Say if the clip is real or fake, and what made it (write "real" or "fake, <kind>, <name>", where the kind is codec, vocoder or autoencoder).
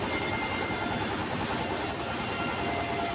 fake, vocoder, BigVGAN v2